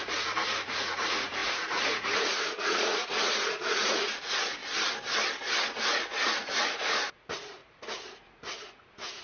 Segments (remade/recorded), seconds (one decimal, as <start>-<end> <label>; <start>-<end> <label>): 0.0-4.6 remade; 4.6-5.6 recorded; 5.6-9.2 remade